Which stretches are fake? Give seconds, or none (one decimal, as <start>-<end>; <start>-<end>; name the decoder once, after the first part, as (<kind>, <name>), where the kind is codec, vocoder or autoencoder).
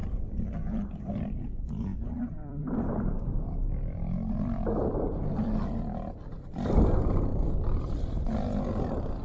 0.0-1.1 (vocoder, BigVGAN v2); 1.9-3.2; 7.3-7.8